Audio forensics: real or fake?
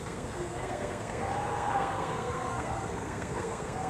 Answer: fake